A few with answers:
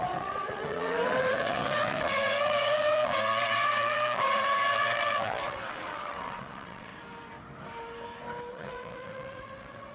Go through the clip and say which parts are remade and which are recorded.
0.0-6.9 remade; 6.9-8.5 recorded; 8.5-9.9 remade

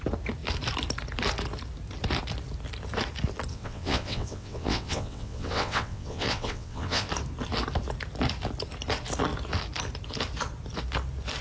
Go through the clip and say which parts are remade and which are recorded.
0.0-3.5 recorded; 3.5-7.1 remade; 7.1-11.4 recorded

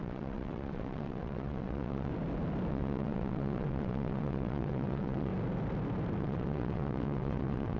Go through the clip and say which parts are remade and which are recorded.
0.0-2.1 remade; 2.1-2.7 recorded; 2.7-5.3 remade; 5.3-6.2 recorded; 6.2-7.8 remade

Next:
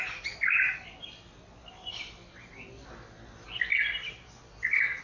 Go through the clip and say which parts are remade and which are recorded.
0.0-5.0 recorded

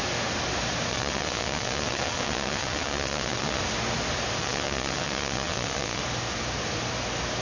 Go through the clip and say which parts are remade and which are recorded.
0.0-0.9 recorded; 0.9-3.6 remade; 3.6-4.4 recorded; 4.4-6.0 remade; 6.0-7.4 recorded

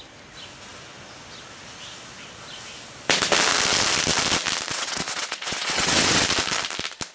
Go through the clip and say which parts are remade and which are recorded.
0.0-4.7 recorded; 4.7-6.2 remade; 6.2-7.1 recorded

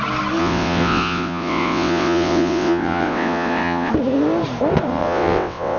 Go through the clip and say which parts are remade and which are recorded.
0.0-0.4 recorded; 0.4-3.9 remade; 3.9-4.9 recorded; 4.9-5.8 remade

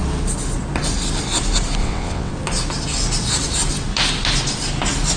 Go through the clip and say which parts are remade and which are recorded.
0.0-1.8 recorded; 1.8-2.3 remade; 2.3-5.2 recorded